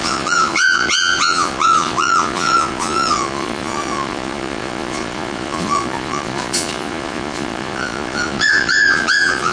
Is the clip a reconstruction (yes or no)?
yes